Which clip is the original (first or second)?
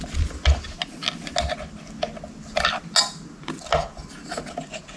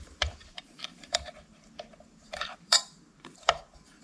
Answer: first